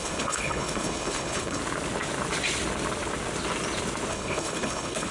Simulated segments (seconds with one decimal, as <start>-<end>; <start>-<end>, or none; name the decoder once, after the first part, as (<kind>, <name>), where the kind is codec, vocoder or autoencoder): 0.0-1.6 (codec, HILCodec); 4.1-5.1